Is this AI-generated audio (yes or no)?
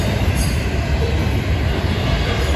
no